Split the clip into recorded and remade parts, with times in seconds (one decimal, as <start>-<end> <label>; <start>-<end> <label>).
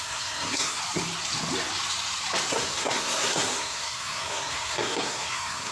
0.0-0.8 remade; 0.8-2.5 recorded; 2.5-5.7 remade